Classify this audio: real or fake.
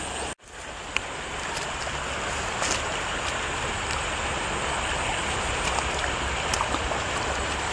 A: real